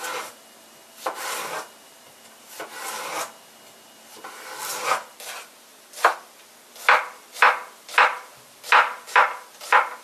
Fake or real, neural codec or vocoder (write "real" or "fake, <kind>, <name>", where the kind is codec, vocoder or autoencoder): real